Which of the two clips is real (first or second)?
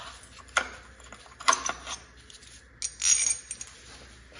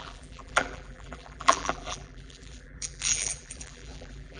first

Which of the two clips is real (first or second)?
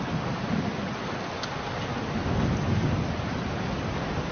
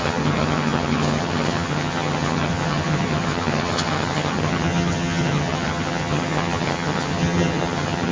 first